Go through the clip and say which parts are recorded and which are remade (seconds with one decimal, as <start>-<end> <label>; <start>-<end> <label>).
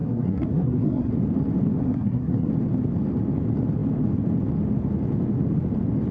0.0-1.1 remade; 1.1-1.8 recorded; 1.8-2.5 remade; 2.5-6.1 recorded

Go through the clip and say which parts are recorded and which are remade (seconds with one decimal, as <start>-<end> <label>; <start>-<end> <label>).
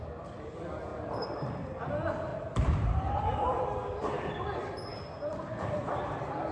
0.0-2.3 recorded; 2.3-4.3 remade; 4.3-4.9 recorded; 4.9-6.5 remade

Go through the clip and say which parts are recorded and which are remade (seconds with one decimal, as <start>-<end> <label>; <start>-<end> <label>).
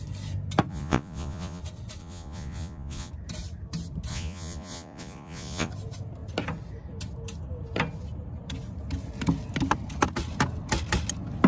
0.0-0.7 recorded; 0.7-1.6 remade; 1.6-2.0 recorded; 2.0-3.1 remade; 3.1-4.1 recorded; 4.1-5.7 remade; 5.7-11.5 recorded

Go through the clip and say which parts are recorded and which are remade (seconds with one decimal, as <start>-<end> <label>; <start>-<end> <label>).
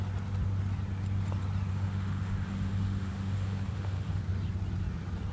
0.0-1.7 recorded; 1.7-4.2 remade; 4.2-5.3 recorded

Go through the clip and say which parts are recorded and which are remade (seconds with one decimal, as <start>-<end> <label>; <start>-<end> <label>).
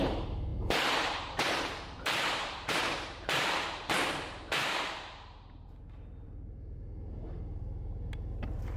0.0-8.8 remade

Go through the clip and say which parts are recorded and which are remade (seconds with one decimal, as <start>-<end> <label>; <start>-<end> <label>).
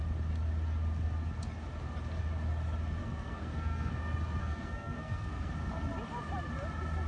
0.0-3.0 recorded; 3.0-3.9 remade; 3.9-4.4 recorded; 4.4-5.5 remade; 5.5-7.1 recorded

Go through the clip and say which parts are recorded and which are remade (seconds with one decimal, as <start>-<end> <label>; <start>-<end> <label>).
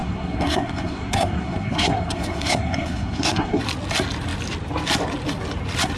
0.0-3.6 remade; 3.6-6.0 recorded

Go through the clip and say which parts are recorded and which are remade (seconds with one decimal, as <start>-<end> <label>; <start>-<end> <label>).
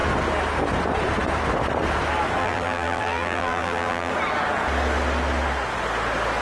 0.0-2.4 recorded; 2.4-4.1 remade; 4.1-6.4 recorded